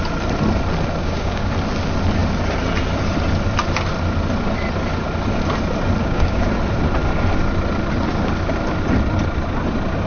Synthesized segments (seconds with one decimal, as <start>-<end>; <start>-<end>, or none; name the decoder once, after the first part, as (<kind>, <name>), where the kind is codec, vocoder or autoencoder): 1.0-1.5 (codec, DAC); 6.0-6.5